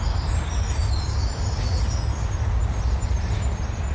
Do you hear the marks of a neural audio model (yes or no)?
no